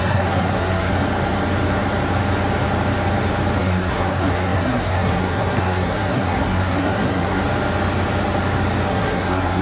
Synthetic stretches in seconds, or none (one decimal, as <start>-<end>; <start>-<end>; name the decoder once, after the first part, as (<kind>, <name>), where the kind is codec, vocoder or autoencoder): 0.0-0.9 (codec, SNAC); 3.6-7.4; 8.9-9.6